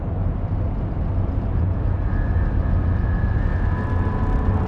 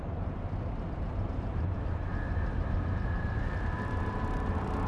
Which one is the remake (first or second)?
second